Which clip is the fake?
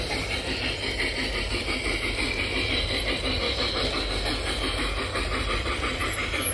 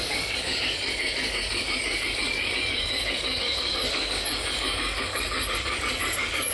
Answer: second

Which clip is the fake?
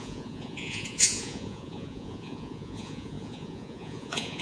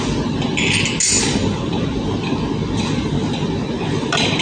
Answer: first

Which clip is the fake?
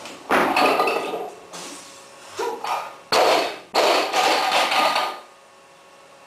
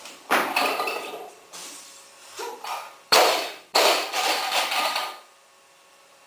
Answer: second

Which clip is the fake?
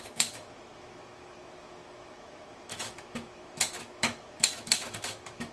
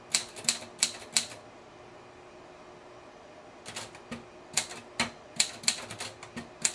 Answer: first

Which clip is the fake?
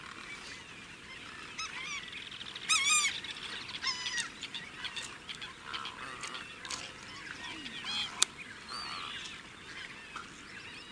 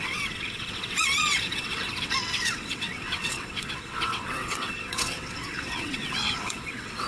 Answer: second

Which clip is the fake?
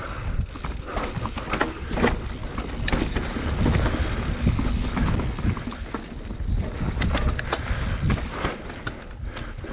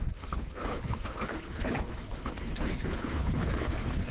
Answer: second